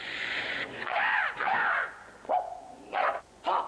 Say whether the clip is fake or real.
fake